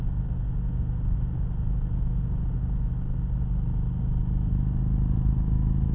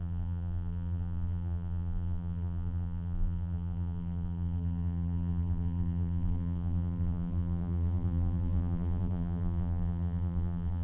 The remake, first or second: second